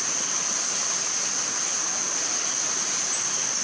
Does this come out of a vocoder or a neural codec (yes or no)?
no